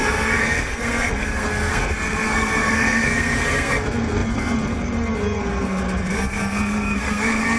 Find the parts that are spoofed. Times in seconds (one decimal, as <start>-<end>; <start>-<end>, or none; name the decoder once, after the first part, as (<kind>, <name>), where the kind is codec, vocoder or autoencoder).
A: 0.0-7.6 (codec, SNAC)